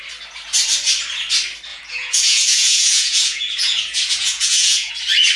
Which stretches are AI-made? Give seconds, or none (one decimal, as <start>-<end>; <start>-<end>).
1.7-4.9